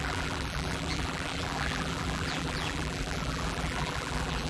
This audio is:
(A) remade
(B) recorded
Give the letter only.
A